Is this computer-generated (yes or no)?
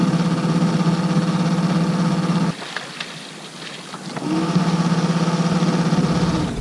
no